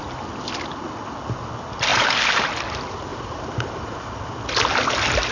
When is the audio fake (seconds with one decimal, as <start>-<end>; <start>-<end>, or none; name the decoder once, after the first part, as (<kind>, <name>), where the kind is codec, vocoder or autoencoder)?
1.9-2.5 (vocoder, BigVGAN v2); 3.1-4.1